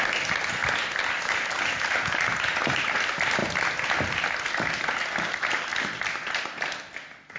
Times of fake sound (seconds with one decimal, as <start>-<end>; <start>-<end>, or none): none